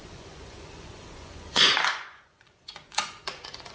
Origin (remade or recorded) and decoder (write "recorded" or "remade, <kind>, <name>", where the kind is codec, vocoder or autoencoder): remade, vocoder, Vocos